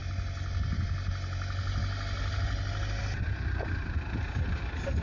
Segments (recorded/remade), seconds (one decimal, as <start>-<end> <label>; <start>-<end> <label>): 0.0-5.0 recorded